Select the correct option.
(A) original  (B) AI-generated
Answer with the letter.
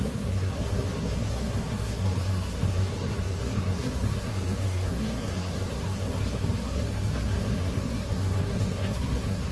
B